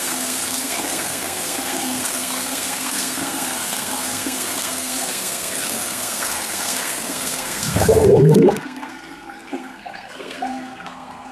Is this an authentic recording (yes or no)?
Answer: no